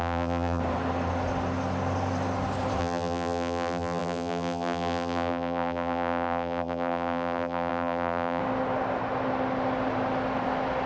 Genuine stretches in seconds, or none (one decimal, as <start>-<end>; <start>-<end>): 0.6-2.8; 8.4-10.9